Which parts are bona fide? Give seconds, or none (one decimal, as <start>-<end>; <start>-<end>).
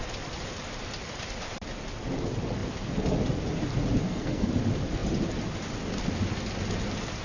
0.0-4.0; 4.5-7.2